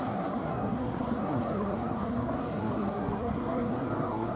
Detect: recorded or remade remade